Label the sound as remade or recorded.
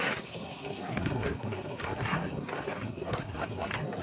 remade